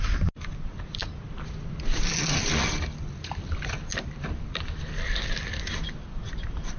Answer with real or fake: real